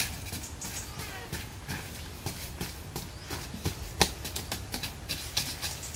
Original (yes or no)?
yes